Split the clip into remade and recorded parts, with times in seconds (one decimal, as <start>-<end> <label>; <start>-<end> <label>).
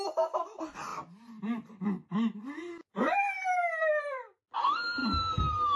0.0-5.8 recorded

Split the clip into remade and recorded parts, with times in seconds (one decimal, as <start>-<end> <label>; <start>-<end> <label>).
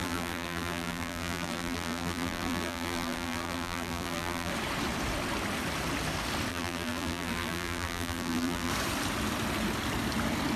0.0-4.5 remade; 4.5-6.5 recorded; 6.5-8.7 remade; 8.7-10.6 recorded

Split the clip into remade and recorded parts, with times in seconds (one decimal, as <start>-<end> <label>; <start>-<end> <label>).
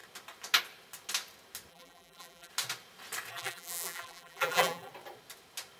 0.0-1.7 recorded; 1.7-2.5 remade; 2.5-3.3 recorded; 3.3-4.9 remade; 4.9-5.8 recorded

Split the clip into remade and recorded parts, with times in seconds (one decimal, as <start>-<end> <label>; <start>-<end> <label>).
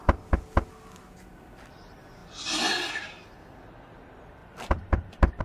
0.0-4.4 recorded; 4.4-5.4 remade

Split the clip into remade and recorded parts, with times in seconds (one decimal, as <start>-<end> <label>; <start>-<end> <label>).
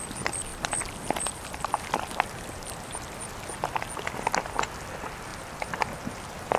0.0-0.5 recorded; 0.5-2.9 remade; 2.9-6.6 recorded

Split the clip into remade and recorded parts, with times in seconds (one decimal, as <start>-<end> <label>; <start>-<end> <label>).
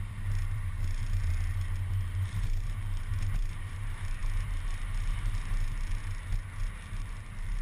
0.0-1.0 remade; 1.0-1.9 recorded; 1.9-6.0 remade; 6.0-7.0 recorded; 7.0-7.6 remade